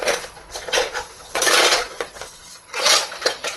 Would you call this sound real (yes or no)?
no